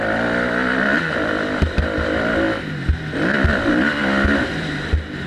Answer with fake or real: real